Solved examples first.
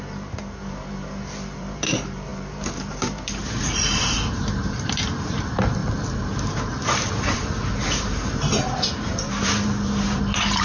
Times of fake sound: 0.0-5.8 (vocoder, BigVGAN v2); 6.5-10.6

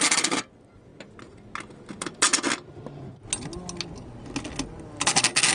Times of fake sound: none